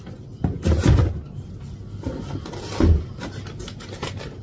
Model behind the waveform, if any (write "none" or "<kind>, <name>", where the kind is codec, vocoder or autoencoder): none